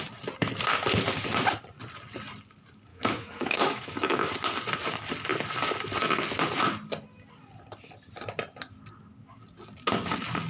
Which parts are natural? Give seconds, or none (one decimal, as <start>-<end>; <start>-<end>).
0.0-2.9; 4.3-10.5